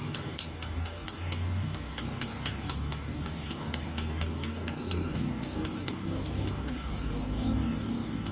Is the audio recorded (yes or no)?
no